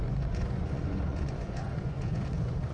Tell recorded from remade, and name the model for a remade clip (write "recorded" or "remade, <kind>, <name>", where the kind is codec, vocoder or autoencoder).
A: remade, vocoder, Vocos